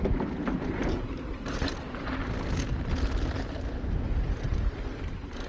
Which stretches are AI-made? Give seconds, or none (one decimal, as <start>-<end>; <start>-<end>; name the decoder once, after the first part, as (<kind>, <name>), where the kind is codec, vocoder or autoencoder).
0.0-2.2 (vocoder, BigVGAN v2); 4.4-5.5